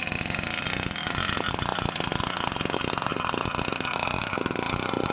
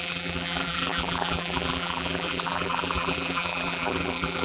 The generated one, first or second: second